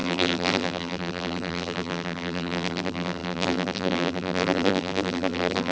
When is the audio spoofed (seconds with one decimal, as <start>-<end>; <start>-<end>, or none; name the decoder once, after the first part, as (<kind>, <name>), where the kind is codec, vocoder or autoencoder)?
0.0-5.7 (vocoder, BigVGAN v2)